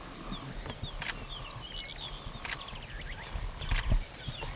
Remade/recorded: recorded